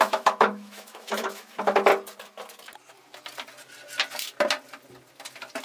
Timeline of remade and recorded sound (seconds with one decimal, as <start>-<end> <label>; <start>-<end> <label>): 0.0-1.9 remade; 1.9-5.6 recorded